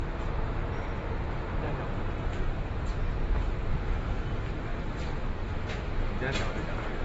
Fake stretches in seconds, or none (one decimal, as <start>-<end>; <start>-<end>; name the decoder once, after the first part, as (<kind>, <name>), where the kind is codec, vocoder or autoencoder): 2.3-4.1 (vocoder, BigVGAN v2); 4.7-6.0